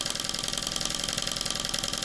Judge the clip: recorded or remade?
recorded